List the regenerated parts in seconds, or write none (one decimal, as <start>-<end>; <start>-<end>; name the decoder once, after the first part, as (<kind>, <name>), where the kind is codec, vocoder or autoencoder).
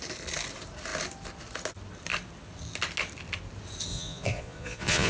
3.9-5.1 (vocoder, Vocos)